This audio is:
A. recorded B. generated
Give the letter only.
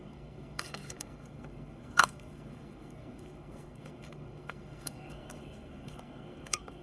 B